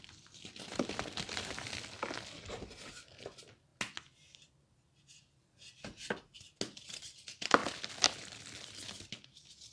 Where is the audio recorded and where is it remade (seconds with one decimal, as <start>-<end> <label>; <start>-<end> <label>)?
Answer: 0.0-9.7 recorded

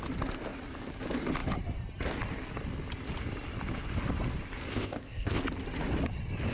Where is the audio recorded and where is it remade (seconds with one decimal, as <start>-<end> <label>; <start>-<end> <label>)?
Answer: 0.0-4.7 recorded; 4.7-5.4 remade; 5.4-6.5 recorded

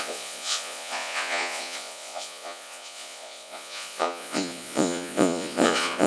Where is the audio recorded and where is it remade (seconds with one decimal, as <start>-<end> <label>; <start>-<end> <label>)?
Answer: 0.0-6.1 remade

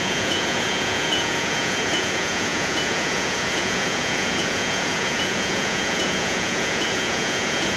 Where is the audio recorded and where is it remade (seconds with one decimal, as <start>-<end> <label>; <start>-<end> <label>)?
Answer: 0.0-7.8 remade

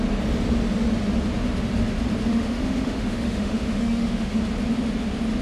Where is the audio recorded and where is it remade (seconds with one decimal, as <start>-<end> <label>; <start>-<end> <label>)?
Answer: 0.0-2.3 recorded; 2.3-4.4 remade; 4.4-5.4 recorded